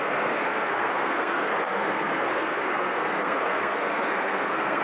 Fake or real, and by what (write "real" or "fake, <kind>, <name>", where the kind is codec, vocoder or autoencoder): fake, codec, SNAC